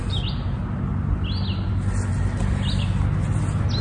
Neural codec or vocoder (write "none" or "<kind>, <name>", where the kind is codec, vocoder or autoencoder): none